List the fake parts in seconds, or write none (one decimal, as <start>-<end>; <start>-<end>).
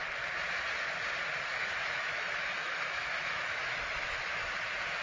1.5-4.5